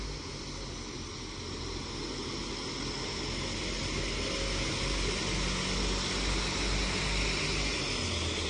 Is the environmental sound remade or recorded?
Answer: recorded